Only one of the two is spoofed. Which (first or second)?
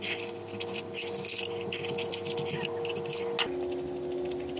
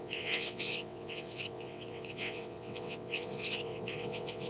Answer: second